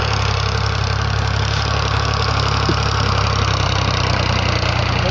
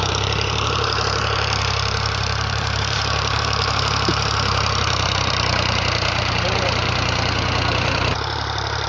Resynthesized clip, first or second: second